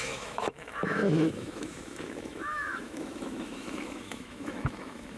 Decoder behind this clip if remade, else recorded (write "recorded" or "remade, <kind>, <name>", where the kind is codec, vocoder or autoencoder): remade, autoencoder, DAC-VAE